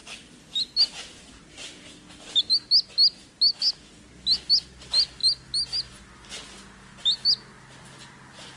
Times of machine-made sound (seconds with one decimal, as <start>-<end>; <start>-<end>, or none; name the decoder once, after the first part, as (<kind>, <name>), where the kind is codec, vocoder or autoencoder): none